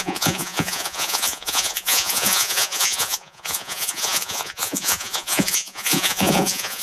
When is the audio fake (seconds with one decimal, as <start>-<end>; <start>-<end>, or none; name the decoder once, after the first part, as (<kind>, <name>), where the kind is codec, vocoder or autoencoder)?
0.0-6.8 (vocoder, Vocos)